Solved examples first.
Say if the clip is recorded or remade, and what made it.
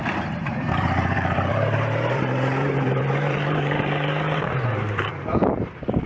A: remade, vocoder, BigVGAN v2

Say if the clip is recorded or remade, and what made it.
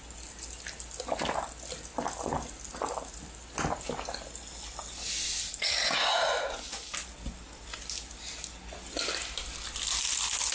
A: recorded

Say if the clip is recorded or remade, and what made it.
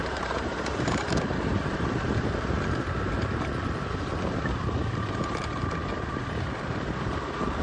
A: remade, vocoder, BigVGAN v2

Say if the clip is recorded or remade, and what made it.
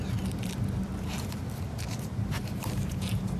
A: remade, vocoder, BigVGAN v2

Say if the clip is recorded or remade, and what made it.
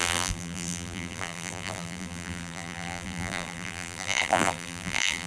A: remade, vocoder, BigVGAN v2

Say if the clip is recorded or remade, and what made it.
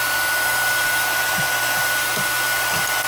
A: recorded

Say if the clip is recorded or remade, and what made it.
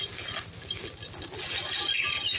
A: recorded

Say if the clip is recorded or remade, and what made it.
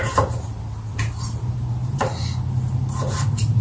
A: recorded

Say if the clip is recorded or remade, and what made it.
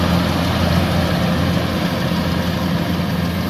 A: recorded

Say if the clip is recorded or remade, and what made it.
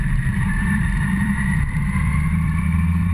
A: remade, vocoder, BigVGAN v2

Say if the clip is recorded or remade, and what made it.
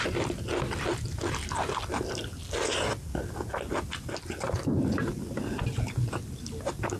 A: recorded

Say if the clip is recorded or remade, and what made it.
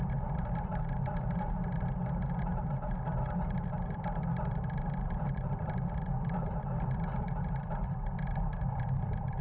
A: remade, vocoder, BigVGAN v2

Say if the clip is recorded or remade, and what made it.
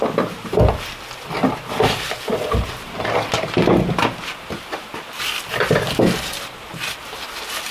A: recorded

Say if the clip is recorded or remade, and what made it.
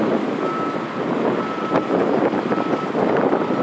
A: recorded